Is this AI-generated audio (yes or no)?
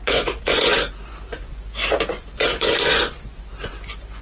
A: yes